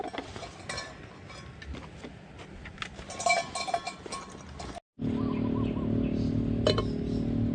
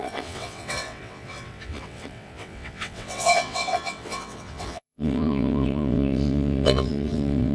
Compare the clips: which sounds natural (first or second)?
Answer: first